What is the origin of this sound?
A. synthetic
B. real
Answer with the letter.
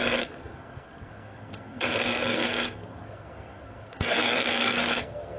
A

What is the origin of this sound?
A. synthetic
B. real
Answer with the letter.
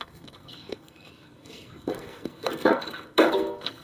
A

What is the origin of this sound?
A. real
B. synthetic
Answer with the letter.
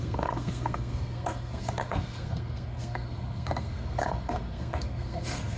B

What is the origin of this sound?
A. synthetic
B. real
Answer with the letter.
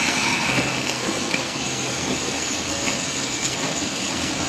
A